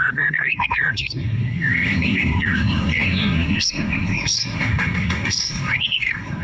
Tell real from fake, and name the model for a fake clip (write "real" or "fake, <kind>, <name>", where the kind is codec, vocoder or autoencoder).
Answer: fake, codec, SNAC